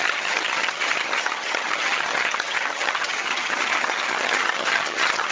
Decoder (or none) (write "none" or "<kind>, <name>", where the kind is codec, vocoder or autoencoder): vocoder, HiFi-GAN